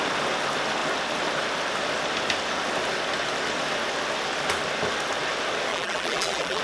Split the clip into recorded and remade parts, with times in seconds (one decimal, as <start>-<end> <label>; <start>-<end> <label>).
0.0-5.7 recorded; 5.7-6.6 remade